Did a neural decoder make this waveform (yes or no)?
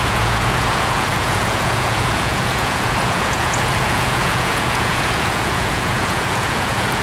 yes